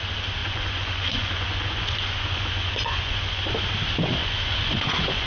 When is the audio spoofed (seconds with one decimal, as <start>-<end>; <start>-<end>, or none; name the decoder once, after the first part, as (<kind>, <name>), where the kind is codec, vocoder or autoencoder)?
0.4-3.4 (vocoder, Vocos); 4.2-5.3